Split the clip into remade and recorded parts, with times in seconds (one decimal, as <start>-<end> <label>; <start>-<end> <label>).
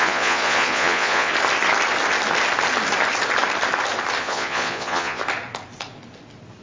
0.0-1.3 remade; 1.3-4.2 recorded; 4.2-5.2 remade; 5.2-6.6 recorded